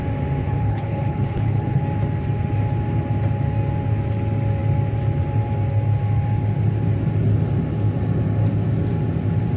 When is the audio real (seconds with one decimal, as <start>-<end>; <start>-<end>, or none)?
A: 0.0-0.4; 1.8-9.6